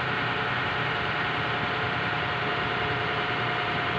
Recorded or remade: remade